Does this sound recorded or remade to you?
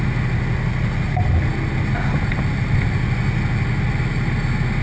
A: recorded